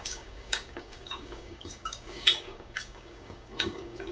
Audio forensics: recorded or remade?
remade